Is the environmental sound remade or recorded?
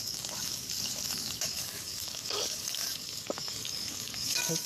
remade